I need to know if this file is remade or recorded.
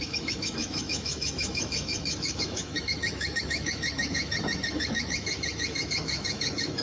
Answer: remade